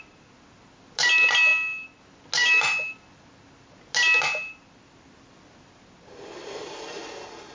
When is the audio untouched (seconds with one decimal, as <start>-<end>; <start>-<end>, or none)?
0.0-2.4; 2.9-7.5